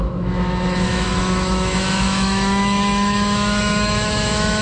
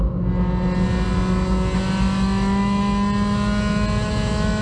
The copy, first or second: first